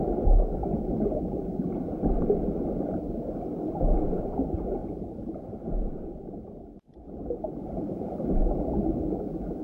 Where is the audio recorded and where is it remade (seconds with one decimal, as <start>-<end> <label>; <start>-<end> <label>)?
0.0-4.8 recorded; 4.8-5.7 remade; 5.7-7.6 recorded; 7.6-8.4 remade; 8.4-9.6 recorded